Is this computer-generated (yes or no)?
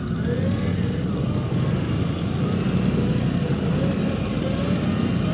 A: no